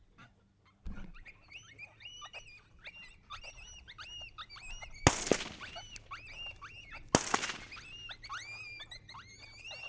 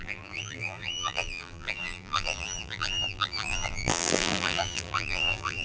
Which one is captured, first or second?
first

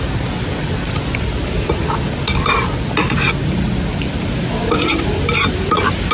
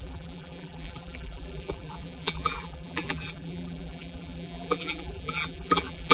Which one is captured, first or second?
first